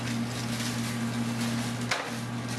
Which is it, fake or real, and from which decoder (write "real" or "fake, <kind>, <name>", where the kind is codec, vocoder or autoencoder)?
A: real